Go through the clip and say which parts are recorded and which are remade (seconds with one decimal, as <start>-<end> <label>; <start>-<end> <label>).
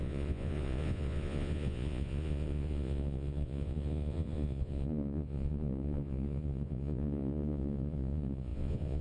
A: 0.0-9.0 remade